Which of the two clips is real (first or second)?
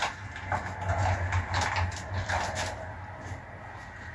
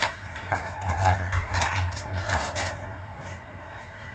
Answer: first